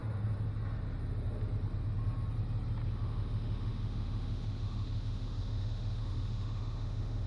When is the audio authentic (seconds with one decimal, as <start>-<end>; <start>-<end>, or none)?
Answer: 0.0-2.9

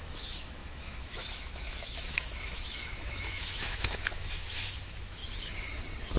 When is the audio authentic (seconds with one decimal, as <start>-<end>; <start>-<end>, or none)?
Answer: 5.2-6.2

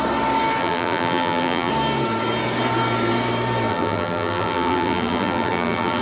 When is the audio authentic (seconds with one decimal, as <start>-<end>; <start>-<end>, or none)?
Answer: 0.0-0.6; 1.7-3.7